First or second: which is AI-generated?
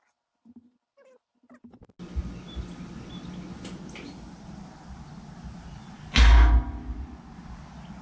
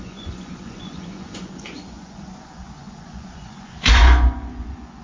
second